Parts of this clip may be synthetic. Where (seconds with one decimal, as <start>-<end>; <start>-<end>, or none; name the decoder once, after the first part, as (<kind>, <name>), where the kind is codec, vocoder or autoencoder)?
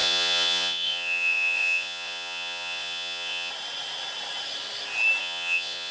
0.0-3.5 (vocoder, Vocos); 5.2-5.9